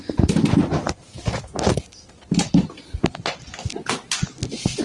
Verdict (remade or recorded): recorded